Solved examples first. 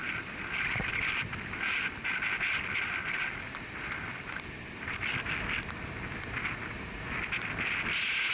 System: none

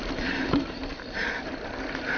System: vocoder, BigVGAN v2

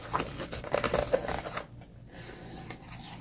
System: none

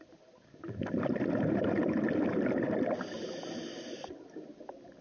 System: none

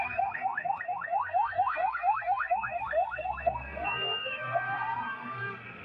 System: codec, SNAC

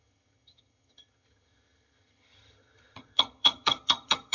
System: vocoder, HiFi-GAN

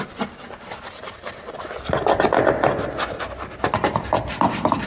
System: none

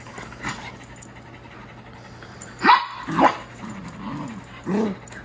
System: none